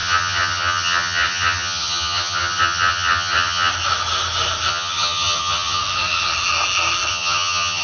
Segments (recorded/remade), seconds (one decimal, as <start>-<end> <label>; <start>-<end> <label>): 0.0-3.7 remade; 3.7-4.7 recorded; 4.7-5.8 remade; 5.8-7.1 recorded; 7.1-7.8 remade